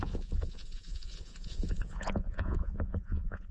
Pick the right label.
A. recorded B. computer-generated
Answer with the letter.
B